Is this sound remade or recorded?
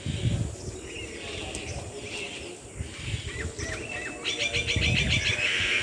recorded